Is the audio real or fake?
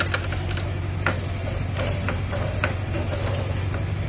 real